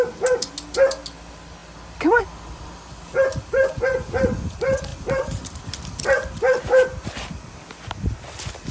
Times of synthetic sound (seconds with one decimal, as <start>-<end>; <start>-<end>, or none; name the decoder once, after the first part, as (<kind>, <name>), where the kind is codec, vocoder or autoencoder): none

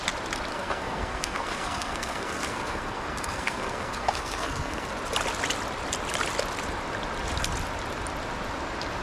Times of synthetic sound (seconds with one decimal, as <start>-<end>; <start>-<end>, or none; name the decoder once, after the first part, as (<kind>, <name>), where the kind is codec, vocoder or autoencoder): 0.5-4.9 (codec, SNAC)

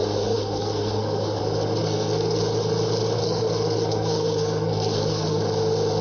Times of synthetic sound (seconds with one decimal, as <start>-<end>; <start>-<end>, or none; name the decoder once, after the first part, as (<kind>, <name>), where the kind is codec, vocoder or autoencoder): 0.0-1.4 (codec, SNAC); 1.8-2.4; 3.2-5.4

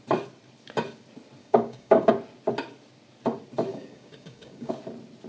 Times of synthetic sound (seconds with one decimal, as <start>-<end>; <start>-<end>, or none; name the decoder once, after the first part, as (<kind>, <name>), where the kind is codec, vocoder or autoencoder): 1.4-2.1 (codec, DAC); 3.7-4.7

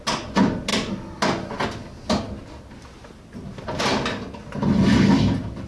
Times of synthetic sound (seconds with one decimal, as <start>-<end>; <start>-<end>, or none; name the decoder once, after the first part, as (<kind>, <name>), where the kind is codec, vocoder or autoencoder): none

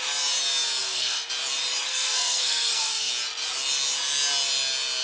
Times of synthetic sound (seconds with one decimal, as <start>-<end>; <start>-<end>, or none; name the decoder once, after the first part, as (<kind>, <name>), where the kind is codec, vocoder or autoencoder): 0.8-1.3 (codec, SNAC); 1.9-3.1

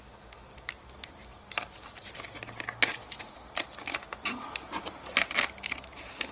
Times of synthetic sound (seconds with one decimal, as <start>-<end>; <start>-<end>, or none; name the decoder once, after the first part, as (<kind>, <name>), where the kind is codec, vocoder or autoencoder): none

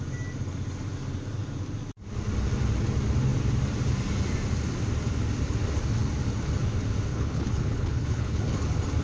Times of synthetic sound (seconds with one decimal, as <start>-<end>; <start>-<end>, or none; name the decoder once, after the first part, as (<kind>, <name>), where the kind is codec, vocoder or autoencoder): 7.1-8.4 (codec, HILCodec)